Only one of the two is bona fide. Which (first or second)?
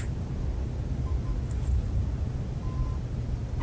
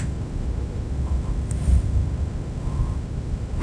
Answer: first